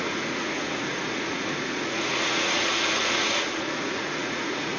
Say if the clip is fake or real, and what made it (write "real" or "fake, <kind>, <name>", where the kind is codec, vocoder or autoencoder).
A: fake, vocoder, Vocos